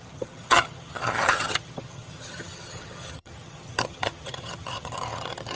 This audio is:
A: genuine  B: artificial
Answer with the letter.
B